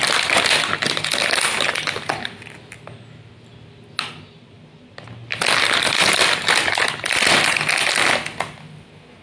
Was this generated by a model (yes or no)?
no